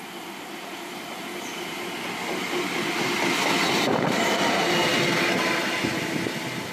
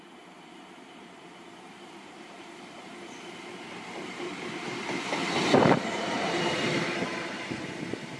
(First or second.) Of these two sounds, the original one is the first